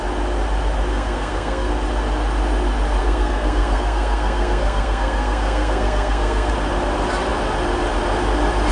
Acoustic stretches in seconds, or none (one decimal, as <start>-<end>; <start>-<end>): 0.0-0.9; 1.7-3.0; 6.5-8.7